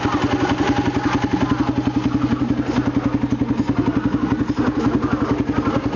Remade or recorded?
recorded